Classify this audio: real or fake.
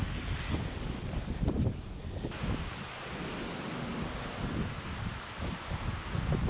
real